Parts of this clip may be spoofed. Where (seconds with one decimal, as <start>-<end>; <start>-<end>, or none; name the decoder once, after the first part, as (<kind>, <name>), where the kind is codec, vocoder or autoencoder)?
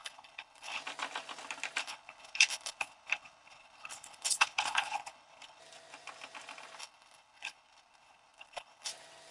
0.0-0.8 (codec, HILCodec); 1.8-5.6; 6.8-8.9